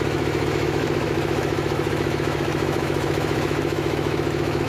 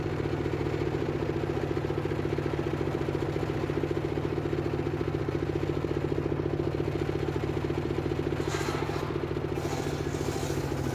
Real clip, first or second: second